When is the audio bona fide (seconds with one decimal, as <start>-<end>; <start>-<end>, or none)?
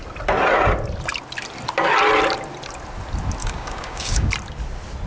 0.0-3.4; 4.3-5.1